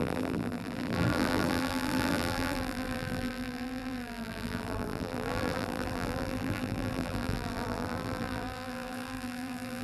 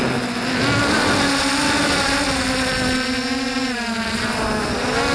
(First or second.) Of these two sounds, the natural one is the second